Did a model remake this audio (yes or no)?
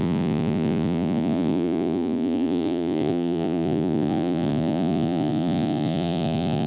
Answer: yes